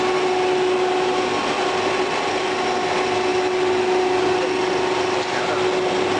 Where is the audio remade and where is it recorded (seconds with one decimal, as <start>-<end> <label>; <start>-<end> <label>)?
0.0-6.2 recorded